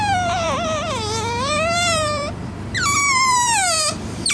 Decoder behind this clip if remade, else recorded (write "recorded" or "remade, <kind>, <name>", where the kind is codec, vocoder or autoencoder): remade, vocoder, BigVGAN v2